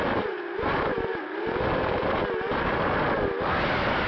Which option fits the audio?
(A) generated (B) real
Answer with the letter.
B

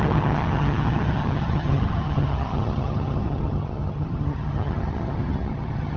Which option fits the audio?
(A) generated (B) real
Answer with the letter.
A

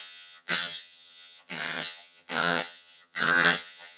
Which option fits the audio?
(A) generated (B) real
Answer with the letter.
A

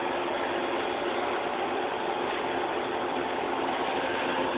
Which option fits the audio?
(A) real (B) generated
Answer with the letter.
A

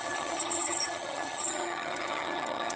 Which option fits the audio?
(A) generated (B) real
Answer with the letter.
A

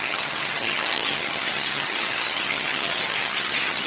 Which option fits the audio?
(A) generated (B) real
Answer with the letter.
A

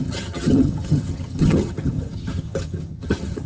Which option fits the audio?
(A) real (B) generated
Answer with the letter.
B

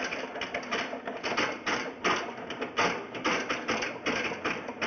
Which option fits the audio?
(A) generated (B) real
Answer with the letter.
B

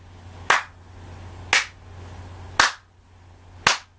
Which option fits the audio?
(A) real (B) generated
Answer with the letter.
A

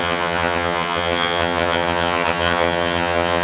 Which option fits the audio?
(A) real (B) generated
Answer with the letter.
B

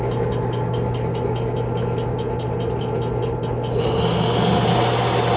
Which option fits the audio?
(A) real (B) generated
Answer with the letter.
A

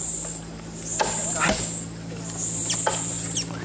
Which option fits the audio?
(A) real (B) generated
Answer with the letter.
A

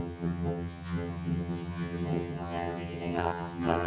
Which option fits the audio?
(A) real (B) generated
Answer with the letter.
B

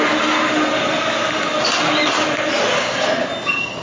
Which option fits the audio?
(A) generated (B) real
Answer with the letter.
B